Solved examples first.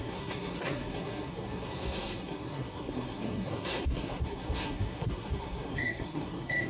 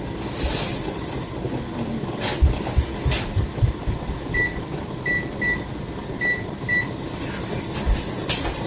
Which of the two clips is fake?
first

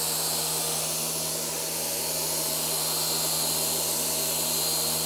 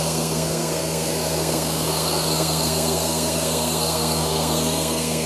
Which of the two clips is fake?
second